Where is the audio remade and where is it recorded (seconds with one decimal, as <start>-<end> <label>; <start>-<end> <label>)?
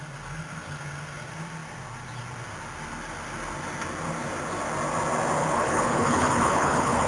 0.0-5.4 recorded; 5.4-7.1 remade